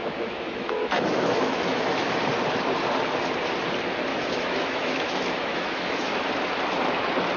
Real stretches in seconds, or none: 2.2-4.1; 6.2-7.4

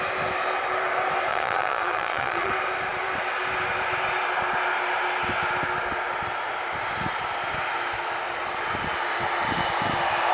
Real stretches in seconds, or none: 0.0-1.3; 2.5-10.3

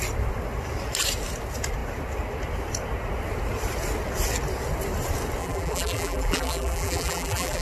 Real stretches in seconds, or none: 0.0-5.4